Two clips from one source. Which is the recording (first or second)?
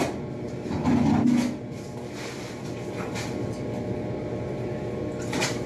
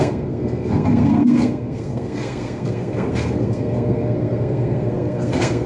first